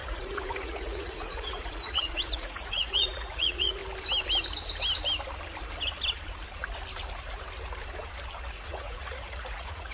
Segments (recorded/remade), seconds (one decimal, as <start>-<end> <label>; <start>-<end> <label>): 0.0-3.8 remade; 3.8-8.5 recorded; 8.5-9.9 remade